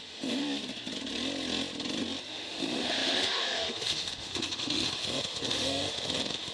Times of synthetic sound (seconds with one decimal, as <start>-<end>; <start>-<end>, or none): 0.0-0.4; 2.3-6.5